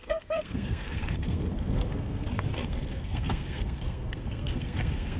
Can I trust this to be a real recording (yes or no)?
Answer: no